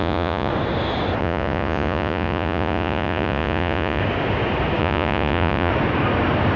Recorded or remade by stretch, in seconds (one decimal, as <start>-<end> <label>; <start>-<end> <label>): 0.0-0.5 remade; 0.5-1.2 recorded; 1.2-4.0 remade; 4.0-4.8 recorded; 4.8-5.7 remade; 5.7-6.6 recorded